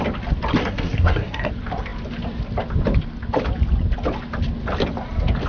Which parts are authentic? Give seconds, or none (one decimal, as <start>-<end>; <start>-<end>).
0.0-0.6; 1.5-5.5